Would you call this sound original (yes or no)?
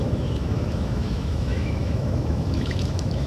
no